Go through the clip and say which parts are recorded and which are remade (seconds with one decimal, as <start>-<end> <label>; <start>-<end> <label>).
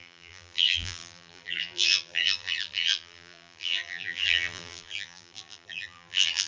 0.0-6.5 remade